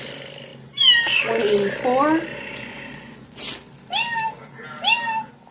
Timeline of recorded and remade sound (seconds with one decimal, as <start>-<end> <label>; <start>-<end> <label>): 0.0-2.3 recorded; 2.3-3.4 remade; 3.4-5.5 recorded